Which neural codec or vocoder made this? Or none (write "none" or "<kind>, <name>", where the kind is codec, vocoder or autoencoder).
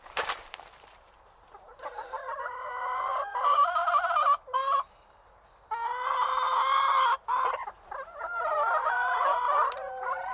vocoder, BigVGAN v2